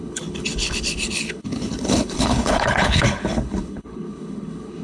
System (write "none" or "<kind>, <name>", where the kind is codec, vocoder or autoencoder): codec, HILCodec